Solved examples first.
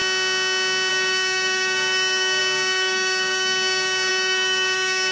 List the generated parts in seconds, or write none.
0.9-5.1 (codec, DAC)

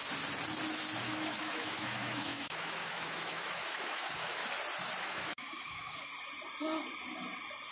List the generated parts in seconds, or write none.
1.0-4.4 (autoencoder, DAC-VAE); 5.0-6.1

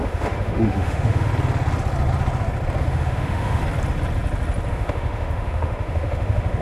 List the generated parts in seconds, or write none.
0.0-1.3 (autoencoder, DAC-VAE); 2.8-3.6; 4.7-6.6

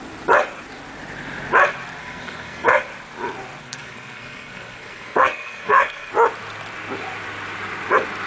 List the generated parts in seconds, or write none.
2.0-2.8 (codec, SNAC); 3.6-6.1